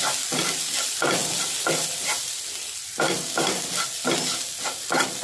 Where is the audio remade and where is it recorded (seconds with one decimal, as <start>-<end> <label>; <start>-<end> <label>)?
0.0-5.2 recorded